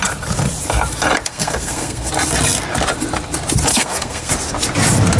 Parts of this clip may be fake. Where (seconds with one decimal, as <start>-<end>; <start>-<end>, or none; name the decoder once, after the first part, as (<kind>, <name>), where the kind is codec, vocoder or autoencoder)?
1.3-2.1 (codec, SNAC); 3.7-4.3